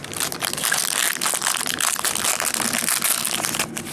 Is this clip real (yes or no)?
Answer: yes